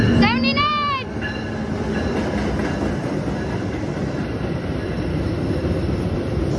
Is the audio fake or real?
real